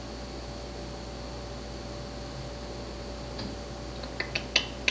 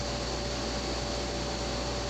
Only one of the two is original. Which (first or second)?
first